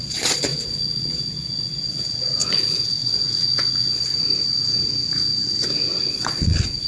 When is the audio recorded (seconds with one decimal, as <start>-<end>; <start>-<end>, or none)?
4.1-6.1